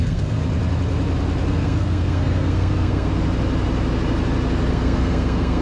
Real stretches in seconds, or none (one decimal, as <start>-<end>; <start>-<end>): 0.4-1.5; 3.1-4.7